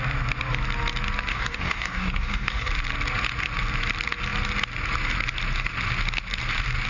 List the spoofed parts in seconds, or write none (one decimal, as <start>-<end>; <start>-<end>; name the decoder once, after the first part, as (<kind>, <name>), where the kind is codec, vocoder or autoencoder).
1.3-2.7 (codec, DAC)